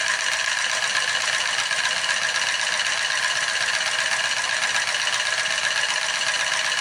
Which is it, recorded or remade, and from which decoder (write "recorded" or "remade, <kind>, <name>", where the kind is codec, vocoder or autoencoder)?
recorded